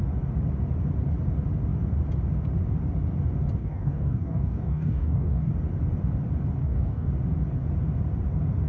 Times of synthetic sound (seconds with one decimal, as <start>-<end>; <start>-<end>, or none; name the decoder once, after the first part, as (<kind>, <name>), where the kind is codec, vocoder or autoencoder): 3.6-5.5 (codec, DAC); 6.6-7.1